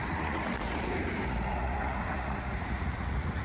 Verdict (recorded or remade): remade